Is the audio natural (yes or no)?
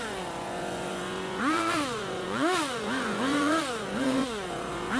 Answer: no